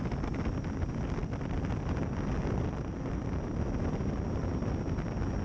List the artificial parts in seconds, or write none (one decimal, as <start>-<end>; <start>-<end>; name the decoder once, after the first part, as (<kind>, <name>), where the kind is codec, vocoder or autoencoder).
none